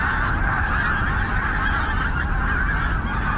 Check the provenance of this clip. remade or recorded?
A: recorded